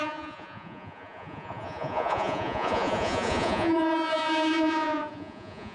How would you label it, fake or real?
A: fake